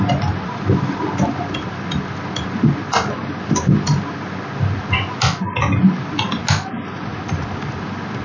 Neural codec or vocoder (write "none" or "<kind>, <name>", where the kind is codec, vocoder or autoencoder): none